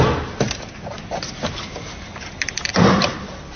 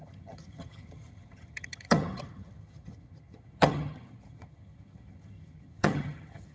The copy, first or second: second